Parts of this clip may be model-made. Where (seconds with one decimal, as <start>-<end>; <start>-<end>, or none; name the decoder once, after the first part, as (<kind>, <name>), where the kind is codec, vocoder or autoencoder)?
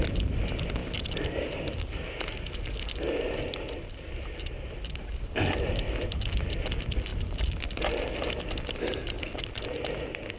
none